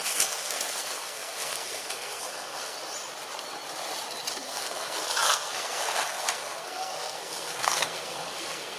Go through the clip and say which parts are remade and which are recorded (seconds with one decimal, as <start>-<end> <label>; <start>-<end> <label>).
0.0-2.8 remade; 2.8-4.3 recorded; 4.3-8.8 remade